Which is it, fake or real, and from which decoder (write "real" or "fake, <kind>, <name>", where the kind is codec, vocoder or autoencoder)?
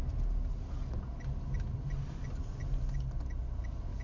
real